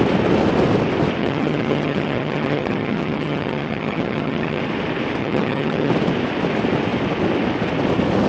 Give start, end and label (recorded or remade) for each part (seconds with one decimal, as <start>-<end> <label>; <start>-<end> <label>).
0.0-1.2 recorded; 1.2-4.6 remade; 4.6-5.2 recorded; 5.2-5.9 remade; 5.9-8.3 recorded